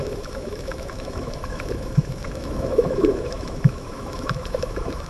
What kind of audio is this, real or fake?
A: fake